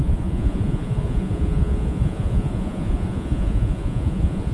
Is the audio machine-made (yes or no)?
yes